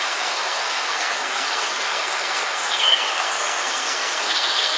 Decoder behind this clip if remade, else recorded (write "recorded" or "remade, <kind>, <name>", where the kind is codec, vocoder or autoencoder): remade, codec, SNAC